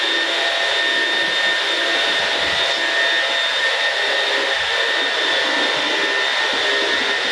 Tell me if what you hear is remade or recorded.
recorded